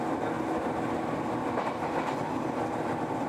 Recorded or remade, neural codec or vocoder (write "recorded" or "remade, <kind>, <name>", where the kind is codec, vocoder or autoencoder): recorded